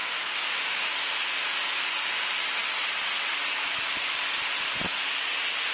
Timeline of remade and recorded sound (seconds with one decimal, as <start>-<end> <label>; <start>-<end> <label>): 0.0-0.9 remade; 0.9-5.7 recorded